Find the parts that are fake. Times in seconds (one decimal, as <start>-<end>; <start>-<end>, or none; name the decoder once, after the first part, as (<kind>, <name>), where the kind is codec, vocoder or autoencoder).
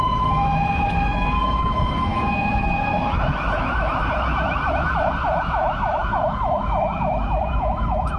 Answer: 0.0-8.2 (autoencoder, DAC-VAE)